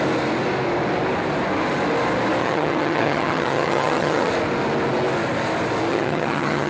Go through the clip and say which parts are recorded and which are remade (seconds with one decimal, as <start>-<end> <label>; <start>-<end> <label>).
0.0-2.4 recorded; 2.4-4.3 remade; 4.3-5.9 recorded; 5.9-6.7 remade